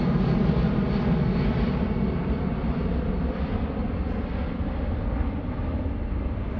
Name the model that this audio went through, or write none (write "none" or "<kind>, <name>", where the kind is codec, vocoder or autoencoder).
none